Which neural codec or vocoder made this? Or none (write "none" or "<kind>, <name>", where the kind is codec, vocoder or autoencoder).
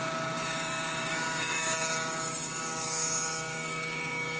codec, DAC